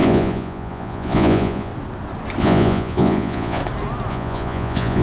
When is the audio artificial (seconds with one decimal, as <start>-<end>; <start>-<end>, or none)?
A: 0.0-1.7; 2.4-3.6; 4.1-5.0